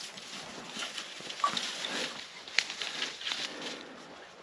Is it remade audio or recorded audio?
remade